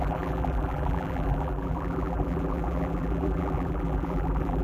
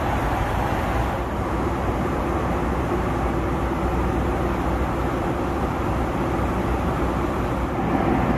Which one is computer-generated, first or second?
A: first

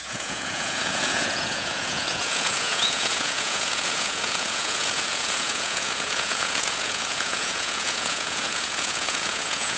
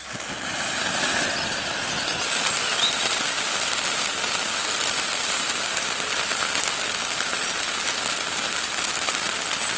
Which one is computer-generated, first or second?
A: first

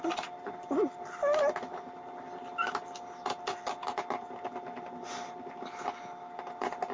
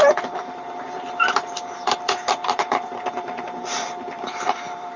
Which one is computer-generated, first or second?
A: second